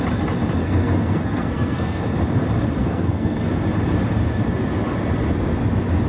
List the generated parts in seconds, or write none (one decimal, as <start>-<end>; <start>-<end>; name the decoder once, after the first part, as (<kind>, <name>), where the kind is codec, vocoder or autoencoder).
0.6-2.0 (codec, SNAC); 2.8-3.5